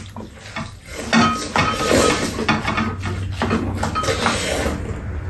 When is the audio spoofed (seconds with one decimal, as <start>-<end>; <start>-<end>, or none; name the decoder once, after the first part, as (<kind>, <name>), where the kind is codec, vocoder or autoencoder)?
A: none